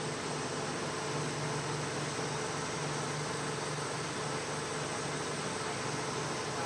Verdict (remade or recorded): recorded